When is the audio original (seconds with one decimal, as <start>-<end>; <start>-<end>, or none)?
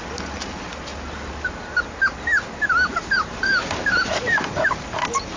0.0-5.4